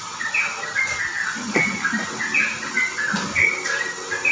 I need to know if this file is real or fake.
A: real